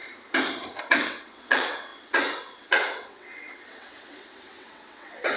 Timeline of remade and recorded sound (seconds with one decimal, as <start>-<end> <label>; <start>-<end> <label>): 0.0-0.8 recorded; 0.8-5.4 remade

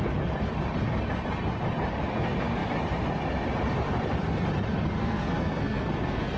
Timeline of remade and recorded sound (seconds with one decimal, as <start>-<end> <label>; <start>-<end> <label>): 0.0-5.0 recorded; 5.0-6.4 remade

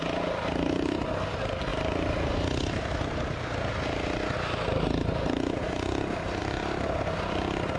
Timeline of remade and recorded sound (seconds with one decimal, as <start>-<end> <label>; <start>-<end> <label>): 0.0-7.8 recorded

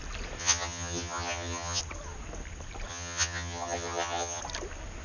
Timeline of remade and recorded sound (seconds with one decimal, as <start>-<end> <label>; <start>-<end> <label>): 0.0-0.4 recorded; 0.4-1.8 remade; 1.8-2.9 recorded; 2.9-4.4 remade; 4.4-5.0 recorded

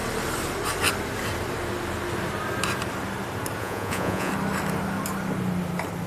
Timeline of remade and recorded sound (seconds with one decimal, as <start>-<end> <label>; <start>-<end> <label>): 0.0-3.6 recorded; 3.6-4.3 remade; 4.3-6.1 recorded

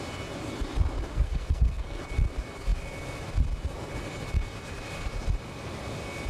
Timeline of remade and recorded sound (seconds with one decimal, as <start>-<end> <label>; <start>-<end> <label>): 0.0-1.1 recorded; 1.1-2.0 remade; 2.0-6.3 recorded

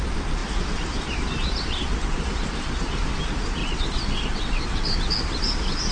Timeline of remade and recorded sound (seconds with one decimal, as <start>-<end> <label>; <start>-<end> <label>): 0.0-3.6 recorded; 3.6-5.0 remade; 5.0-5.9 recorded